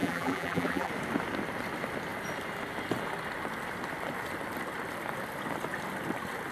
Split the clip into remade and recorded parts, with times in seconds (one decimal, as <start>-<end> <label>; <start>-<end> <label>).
0.0-0.9 remade; 0.9-6.5 recorded